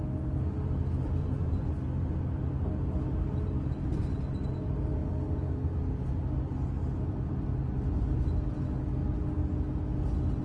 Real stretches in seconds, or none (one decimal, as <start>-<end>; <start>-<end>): 0.0-1.2; 1.7-10.4